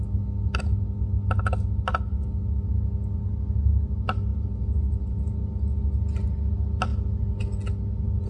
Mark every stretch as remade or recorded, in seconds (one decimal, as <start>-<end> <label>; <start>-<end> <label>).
0.0-8.3 recorded